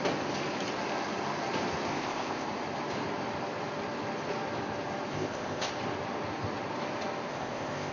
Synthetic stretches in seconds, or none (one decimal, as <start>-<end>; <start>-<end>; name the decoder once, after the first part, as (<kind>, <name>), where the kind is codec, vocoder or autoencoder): 1.9-2.5 (codec, ZipCodec); 5.1-5.7; 7.3-7.9